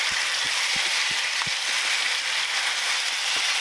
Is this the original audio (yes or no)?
no